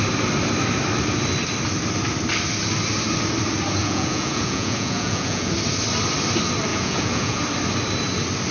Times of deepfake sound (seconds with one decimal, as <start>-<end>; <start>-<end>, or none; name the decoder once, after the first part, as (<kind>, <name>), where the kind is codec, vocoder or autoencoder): 3.8-5.5 (vocoder, Vocos); 6.7-7.4